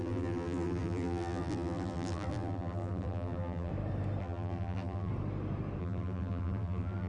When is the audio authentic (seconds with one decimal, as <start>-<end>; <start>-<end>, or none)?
3.7-4.2; 5.1-5.8